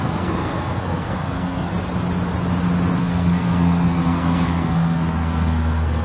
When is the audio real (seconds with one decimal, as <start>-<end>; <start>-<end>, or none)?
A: 1.7-3.0